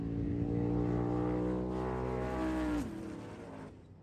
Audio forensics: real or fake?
real